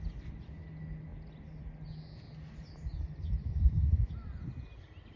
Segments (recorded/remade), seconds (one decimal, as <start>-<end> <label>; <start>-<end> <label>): 0.0-3.4 recorded; 3.4-4.1 remade; 4.1-5.2 recorded